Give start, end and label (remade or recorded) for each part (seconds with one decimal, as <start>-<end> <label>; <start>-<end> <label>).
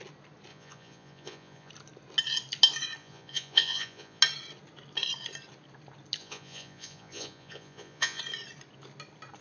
0.0-0.5 recorded; 0.5-1.7 remade; 1.7-3.0 recorded; 3.0-4.2 remade; 4.2-6.2 recorded; 6.2-8.2 remade; 8.2-9.4 recorded